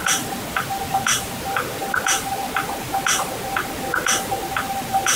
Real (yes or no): yes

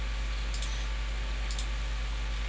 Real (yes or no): yes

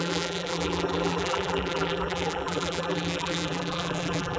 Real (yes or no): no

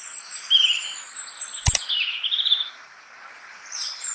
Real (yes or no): no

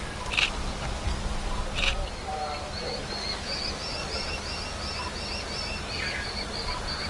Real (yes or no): yes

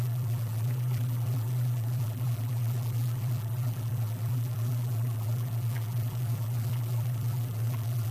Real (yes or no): no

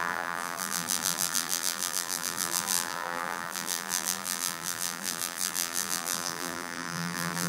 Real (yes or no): no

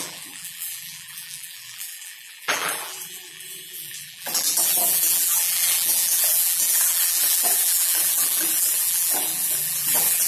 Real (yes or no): no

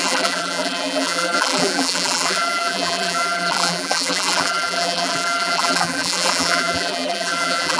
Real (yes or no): no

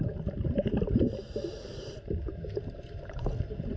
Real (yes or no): no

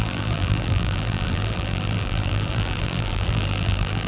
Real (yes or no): no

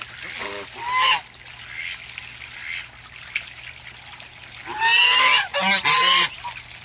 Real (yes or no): yes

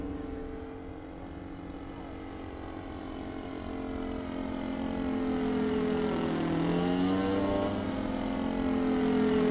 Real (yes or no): yes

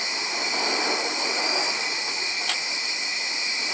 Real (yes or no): yes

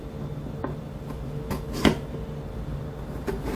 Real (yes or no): yes